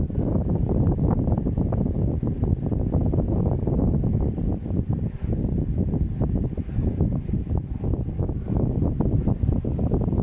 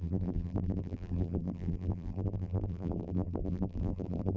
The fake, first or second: second